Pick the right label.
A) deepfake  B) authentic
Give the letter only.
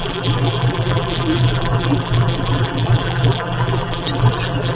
A